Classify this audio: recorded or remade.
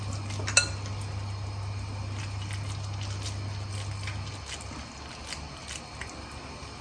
recorded